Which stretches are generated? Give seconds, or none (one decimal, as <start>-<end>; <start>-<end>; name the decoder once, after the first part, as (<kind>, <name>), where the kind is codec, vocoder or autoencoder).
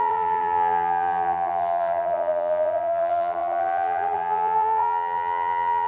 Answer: 0.0-5.9 (vocoder, BigVGAN v2)